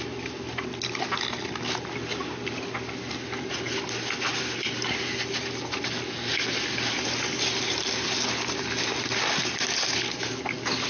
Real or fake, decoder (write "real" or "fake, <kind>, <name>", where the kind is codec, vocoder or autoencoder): real